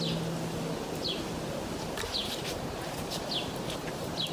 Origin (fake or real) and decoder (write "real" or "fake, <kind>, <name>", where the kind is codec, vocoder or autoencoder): real